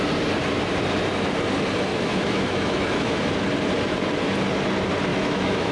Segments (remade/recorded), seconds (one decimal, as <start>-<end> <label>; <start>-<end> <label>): 0.0-1.9 recorded; 1.9-3.2 remade; 3.2-5.1 recorded; 5.1-5.7 remade